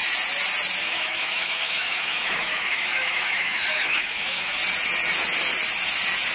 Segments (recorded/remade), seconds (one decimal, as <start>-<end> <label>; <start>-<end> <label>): 0.0-0.8 recorded; 0.8-4.6 remade; 4.6-6.3 recorded